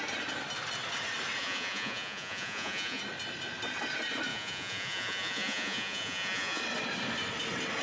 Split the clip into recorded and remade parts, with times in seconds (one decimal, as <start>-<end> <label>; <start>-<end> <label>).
0.0-1.4 recorded; 1.4-3.0 remade; 3.0-4.3 recorded; 4.3-6.6 remade; 6.6-7.8 recorded